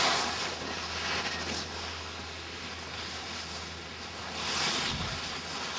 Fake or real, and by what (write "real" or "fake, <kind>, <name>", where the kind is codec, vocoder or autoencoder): real